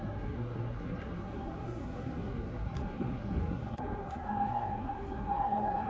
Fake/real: fake